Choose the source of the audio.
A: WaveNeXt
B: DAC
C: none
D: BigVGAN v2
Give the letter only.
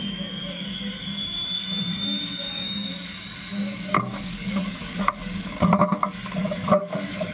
B